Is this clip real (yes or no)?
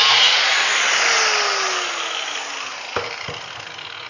yes